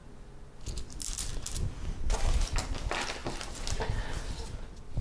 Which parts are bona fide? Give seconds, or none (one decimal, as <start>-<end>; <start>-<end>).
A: 0.0-5.0